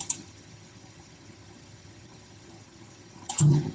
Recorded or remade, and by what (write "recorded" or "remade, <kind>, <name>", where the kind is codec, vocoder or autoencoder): remade, vocoder, HiFi-GAN